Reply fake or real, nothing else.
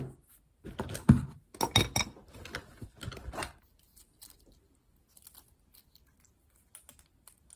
real